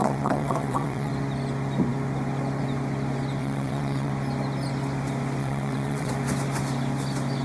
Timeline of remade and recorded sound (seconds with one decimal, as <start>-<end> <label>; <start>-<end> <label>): 0.0-1.1 remade; 1.1-3.4 recorded; 3.4-4.1 remade; 4.1-5.4 recorded; 5.4-6.1 remade; 6.1-7.4 recorded